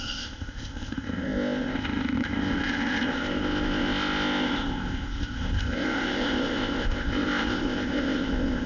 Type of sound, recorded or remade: remade